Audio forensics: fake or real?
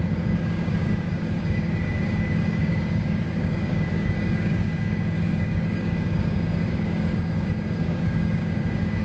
fake